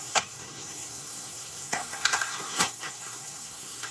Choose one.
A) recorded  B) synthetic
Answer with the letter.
B